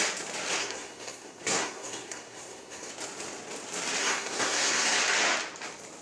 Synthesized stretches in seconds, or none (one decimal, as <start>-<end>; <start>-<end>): 0.6-2.9; 4.0-5.0